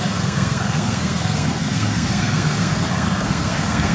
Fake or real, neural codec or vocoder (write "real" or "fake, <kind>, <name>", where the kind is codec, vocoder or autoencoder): fake, codec, SNAC